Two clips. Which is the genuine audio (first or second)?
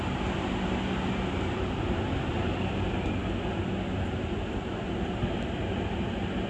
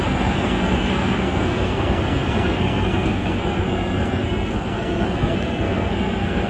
first